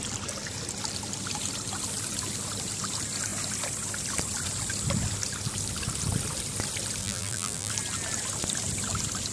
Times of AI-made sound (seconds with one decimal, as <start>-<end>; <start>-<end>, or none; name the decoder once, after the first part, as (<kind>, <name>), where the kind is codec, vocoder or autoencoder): 7.0-7.7 (vocoder, BigVGAN v2)